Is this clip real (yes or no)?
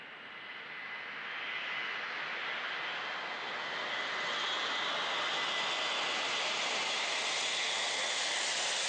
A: yes